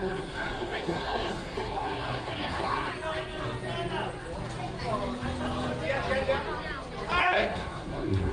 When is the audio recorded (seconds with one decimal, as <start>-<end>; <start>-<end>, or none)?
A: 2.9-7.2